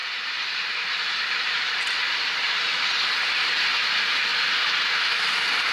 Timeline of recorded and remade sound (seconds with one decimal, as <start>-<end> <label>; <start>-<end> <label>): 0.0-2.9 remade; 2.9-5.7 recorded